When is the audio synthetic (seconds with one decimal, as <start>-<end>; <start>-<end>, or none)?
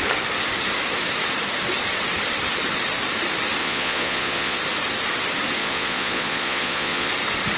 3.6-4.6; 5.6-7.1